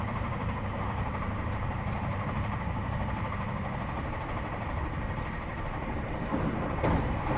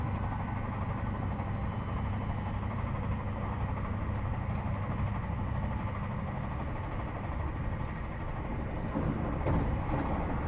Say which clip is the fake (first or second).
first